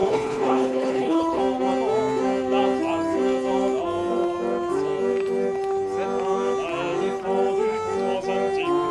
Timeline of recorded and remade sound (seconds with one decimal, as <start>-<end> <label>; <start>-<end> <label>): 0.0-1.4 remade; 1.4-8.9 recorded